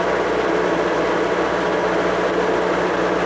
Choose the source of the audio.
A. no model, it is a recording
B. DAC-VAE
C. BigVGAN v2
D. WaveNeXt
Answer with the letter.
A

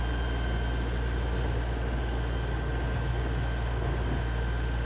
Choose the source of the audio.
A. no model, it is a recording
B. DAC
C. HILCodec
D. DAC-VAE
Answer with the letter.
A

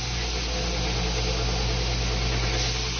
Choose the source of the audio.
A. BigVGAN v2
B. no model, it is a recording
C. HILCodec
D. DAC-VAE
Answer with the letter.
B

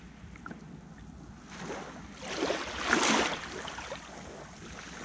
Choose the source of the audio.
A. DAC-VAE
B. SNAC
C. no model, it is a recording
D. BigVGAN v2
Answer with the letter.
C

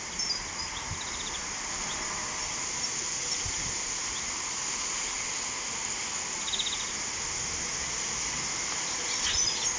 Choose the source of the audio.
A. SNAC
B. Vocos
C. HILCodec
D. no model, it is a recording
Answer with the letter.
D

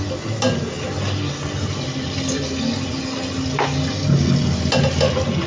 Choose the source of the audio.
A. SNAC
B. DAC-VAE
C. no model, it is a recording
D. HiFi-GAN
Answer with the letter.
C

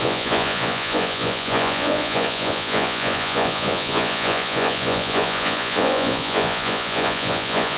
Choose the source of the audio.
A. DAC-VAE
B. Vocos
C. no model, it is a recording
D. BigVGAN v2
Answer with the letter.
B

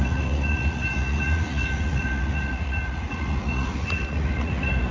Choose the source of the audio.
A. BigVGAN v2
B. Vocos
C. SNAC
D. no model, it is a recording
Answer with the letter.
B